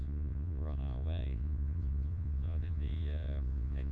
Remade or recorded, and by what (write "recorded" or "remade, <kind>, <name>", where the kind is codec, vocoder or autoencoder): remade, vocoder, Vocos